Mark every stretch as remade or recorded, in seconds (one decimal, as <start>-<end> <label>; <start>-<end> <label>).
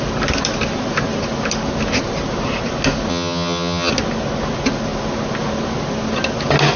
0.0-3.1 recorded; 3.1-3.9 remade; 3.9-6.8 recorded